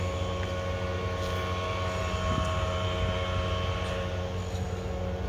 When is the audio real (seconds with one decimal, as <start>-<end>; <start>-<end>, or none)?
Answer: 0.0-5.3